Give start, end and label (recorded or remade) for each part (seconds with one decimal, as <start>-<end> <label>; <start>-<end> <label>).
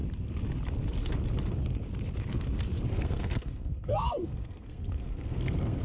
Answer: 0.0-2.9 recorded; 2.9-5.8 remade